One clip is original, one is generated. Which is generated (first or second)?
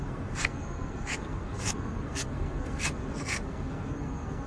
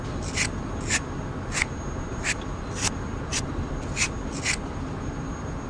first